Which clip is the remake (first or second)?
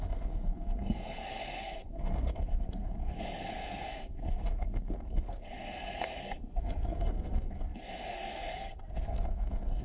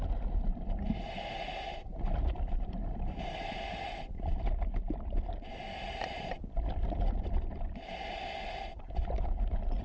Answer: first